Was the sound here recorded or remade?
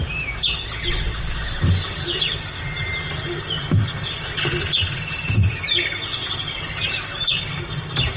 recorded